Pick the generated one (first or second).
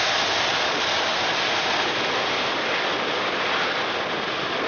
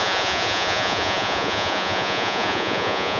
second